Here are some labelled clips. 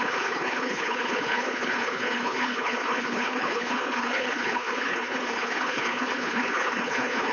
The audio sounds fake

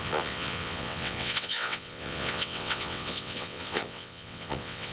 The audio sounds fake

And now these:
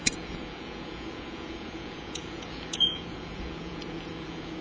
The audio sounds fake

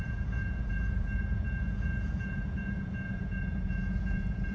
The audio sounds fake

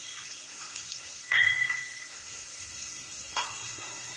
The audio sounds fake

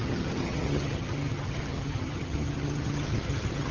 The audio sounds fake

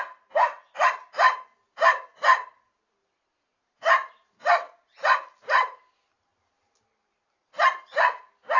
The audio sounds real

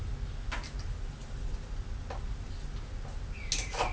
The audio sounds real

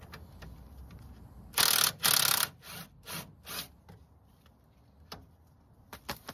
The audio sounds real